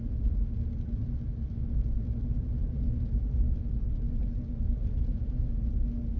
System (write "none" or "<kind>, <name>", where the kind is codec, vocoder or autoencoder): none